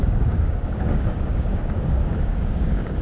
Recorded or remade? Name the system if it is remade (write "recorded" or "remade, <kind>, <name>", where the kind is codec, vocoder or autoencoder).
remade, codec, DAC